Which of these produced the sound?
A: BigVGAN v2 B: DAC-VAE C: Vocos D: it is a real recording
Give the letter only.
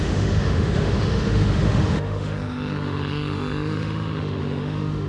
B